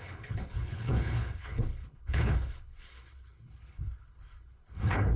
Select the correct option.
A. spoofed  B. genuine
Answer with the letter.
A